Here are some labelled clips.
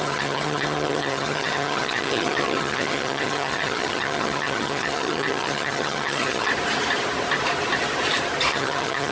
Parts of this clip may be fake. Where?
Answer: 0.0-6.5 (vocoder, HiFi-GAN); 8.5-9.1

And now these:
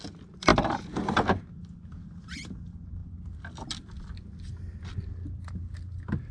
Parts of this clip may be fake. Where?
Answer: 0.5-1.4 (vocoder, BigVGAN v2)

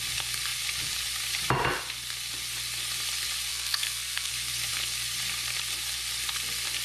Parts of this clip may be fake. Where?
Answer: 3.5-4.3 (codec, SNAC)